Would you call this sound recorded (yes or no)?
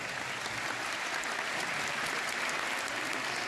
yes